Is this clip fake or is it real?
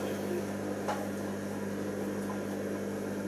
real